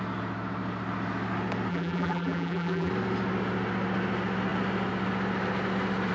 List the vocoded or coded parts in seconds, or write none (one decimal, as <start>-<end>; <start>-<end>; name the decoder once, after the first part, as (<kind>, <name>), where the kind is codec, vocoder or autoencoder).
1.7-2.9 (vocoder, BigVGAN v2)